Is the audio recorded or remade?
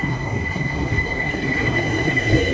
remade